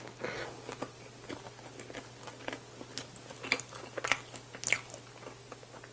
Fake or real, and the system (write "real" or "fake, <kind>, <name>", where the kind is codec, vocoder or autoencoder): real